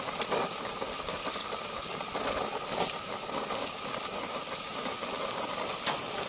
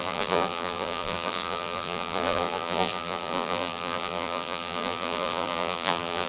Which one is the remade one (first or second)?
second